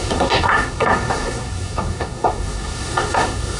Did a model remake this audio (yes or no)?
yes